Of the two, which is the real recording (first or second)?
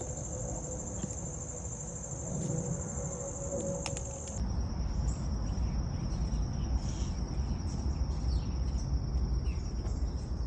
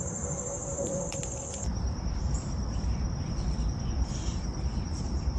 first